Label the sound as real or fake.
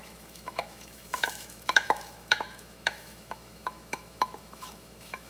fake